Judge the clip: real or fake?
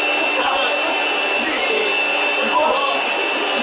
real